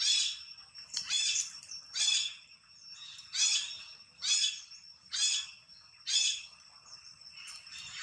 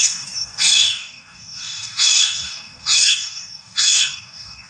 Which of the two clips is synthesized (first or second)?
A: second